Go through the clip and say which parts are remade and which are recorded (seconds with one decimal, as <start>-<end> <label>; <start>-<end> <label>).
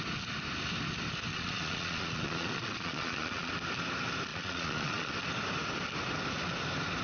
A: 0.0-1.3 recorded; 1.3-3.5 remade; 3.5-4.3 recorded; 4.3-5.1 remade; 5.1-7.0 recorded